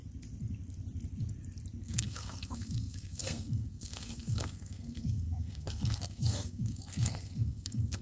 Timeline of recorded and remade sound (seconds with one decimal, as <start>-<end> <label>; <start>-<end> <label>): 0.0-1.8 recorded; 1.8-8.0 remade